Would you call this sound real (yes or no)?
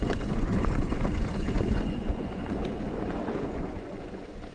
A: no